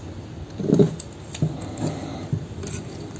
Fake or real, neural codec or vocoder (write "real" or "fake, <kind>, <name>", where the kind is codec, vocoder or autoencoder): real